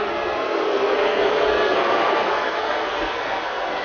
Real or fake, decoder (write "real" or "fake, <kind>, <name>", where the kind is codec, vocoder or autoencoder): fake, codec, SNAC